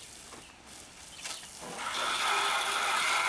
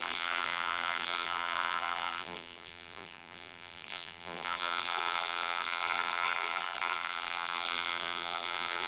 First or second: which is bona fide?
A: first